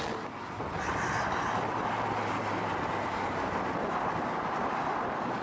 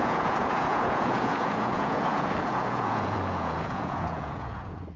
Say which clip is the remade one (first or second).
second